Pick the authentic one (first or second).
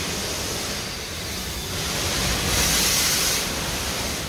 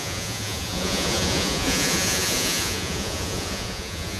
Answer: first